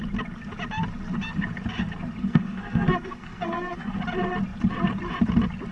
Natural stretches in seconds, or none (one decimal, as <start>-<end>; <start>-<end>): 0.0-2.2; 3.9-5.7